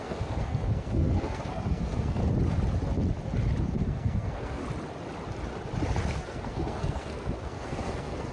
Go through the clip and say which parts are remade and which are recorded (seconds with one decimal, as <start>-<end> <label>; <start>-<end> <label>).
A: 0.0-2.2 remade; 2.2-3.6 recorded; 3.6-4.6 remade; 4.6-6.2 recorded; 6.2-8.3 remade